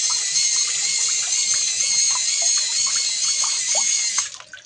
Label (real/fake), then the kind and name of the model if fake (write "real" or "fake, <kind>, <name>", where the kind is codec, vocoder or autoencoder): real